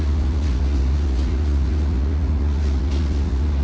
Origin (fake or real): fake